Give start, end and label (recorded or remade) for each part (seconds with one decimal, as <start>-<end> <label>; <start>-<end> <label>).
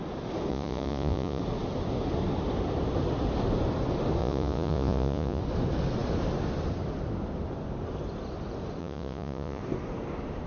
0.0-0.5 recorded; 0.5-1.4 remade; 1.4-4.2 recorded; 4.2-5.4 remade; 5.4-8.8 recorded; 8.8-9.6 remade; 9.6-10.5 recorded